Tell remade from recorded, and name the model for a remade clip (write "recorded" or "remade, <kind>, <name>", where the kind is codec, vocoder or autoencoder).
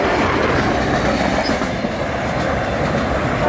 recorded